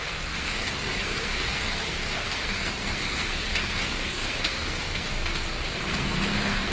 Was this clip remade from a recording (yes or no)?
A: yes